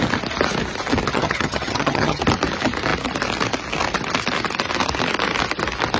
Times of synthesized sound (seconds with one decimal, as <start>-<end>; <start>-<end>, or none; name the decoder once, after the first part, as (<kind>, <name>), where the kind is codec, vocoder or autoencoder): 1.1-2.2 (vocoder, HiFi-GAN)